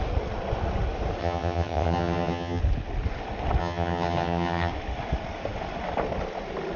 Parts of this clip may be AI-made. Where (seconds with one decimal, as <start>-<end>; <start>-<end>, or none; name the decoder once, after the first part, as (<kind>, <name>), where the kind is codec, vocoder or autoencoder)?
1.2-2.6 (vocoder, HiFi-GAN); 3.6-4.7

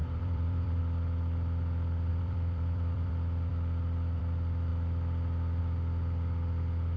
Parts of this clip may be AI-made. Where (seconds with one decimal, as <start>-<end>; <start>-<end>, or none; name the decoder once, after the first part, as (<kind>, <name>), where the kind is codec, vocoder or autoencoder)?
0.0-0.8 (vocoder, BigVGAN v2); 2.1-3.1

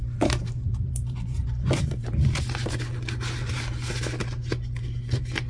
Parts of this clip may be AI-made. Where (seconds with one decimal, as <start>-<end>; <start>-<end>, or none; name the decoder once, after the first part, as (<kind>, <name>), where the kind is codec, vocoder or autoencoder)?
0.0-2.4 (vocoder, BigVGAN v2)

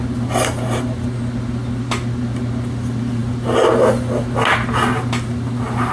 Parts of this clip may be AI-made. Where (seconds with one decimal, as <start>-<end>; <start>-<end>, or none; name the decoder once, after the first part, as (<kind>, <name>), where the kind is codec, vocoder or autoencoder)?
none

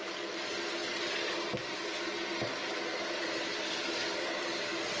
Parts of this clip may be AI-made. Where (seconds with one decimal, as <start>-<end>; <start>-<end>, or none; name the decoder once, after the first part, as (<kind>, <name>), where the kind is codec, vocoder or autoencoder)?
none